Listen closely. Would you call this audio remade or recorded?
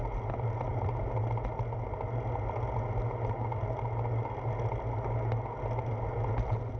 recorded